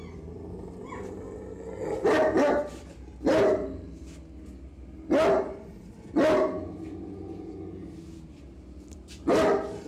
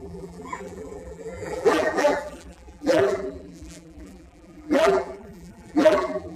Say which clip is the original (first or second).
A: first